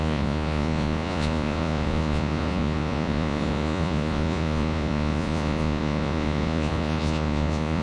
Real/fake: fake